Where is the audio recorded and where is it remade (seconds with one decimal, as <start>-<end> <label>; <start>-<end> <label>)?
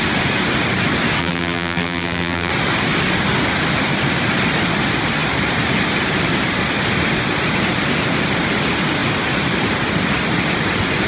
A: 0.0-1.2 recorded; 1.2-2.5 remade; 2.5-11.1 recorded